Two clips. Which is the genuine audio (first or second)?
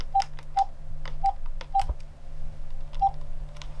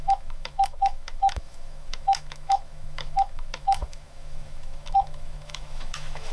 first